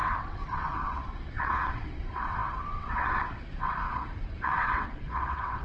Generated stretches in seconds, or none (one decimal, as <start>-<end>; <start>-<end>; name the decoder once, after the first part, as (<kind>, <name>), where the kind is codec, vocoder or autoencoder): 0.0-5.6 (vocoder, WaveNeXt)